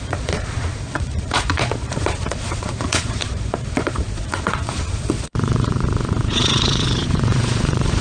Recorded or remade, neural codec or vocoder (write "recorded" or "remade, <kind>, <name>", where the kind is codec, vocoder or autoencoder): remade, vocoder, Vocos